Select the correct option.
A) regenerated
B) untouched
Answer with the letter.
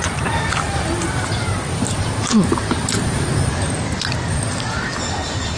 A